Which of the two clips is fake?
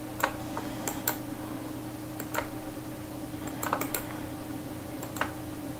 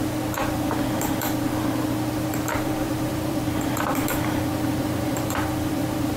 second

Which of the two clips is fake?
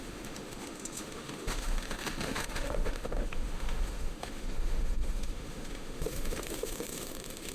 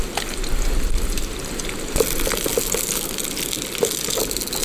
first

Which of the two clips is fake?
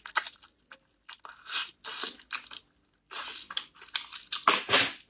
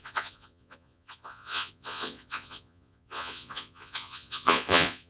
second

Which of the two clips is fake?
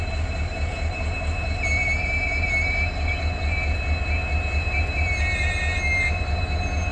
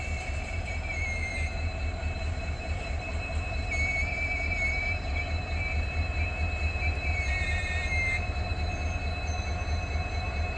second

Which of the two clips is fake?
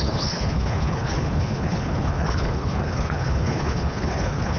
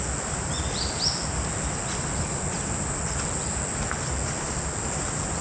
first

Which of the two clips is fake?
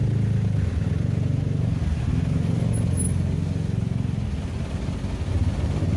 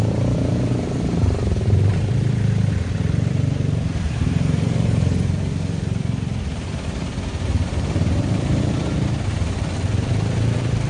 second